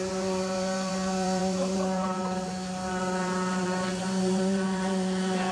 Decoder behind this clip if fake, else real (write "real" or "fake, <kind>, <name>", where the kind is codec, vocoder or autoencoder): fake, vocoder, BigVGAN v2